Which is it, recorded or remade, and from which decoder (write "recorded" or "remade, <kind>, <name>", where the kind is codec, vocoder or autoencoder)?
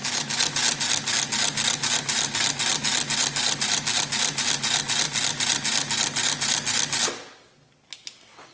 recorded